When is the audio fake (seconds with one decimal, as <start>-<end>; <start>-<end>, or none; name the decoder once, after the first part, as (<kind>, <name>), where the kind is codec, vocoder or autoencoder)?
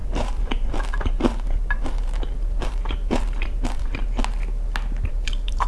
0.0-4.0 (vocoder, BigVGAN v2); 5.1-5.7